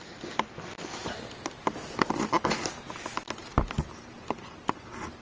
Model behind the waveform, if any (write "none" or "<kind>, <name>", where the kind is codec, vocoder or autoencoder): none